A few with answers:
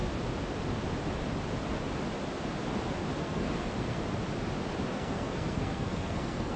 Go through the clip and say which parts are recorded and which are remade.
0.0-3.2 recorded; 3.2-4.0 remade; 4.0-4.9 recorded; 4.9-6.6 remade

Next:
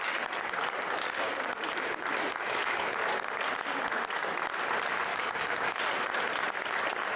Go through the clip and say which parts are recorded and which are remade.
0.0-2.4 recorded; 2.4-3.0 remade; 3.0-5.1 recorded; 5.1-5.8 remade; 5.8-7.2 recorded

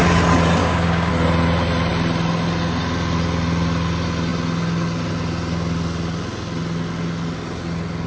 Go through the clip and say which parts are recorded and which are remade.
0.0-0.6 recorded; 0.6-1.1 remade; 1.1-8.1 recorded

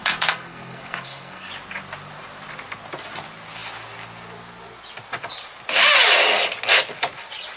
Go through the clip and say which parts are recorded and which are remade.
0.0-1.5 remade; 1.5-7.6 recorded

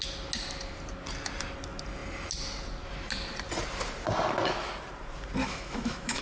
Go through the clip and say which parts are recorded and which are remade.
0.0-5.4 recorded; 5.4-6.2 remade

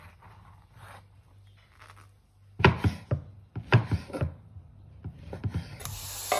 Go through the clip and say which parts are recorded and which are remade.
0.0-3.7 recorded; 3.7-5.8 remade; 5.8-6.4 recorded

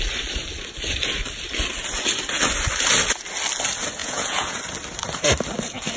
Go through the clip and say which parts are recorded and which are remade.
0.0-4.0 recorded; 4.0-4.6 remade; 4.6-6.0 recorded

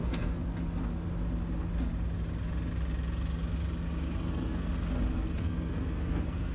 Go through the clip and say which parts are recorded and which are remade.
0.0-0.4 remade; 0.4-4.3 recorded; 4.3-4.7 remade; 4.7-5.4 recorded; 5.4-6.5 remade